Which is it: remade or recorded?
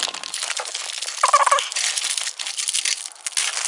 recorded